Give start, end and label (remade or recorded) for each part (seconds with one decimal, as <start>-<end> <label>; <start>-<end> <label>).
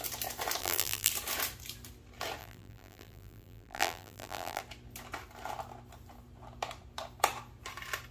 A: 0.0-0.6 recorded; 0.6-1.1 remade; 1.1-2.4 recorded; 2.4-4.6 remade; 4.6-8.1 recorded